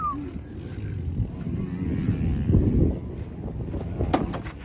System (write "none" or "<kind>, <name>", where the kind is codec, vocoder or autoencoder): none